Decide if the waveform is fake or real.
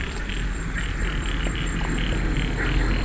real